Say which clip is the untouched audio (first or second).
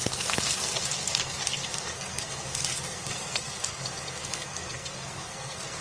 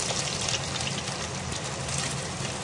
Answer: second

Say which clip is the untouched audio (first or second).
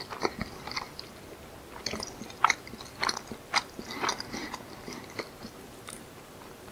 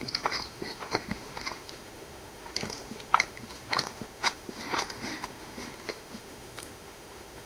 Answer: first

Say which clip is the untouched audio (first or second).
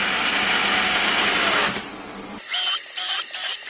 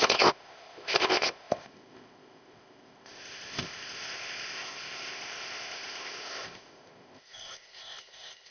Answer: first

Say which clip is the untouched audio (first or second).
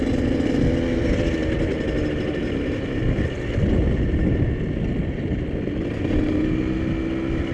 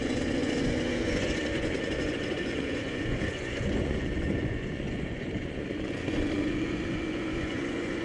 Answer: first